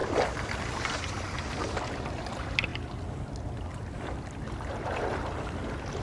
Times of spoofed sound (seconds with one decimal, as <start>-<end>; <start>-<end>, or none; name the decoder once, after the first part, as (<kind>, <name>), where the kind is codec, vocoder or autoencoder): 0.0-2.7 (vocoder, BigVGAN v2); 3.7-6.0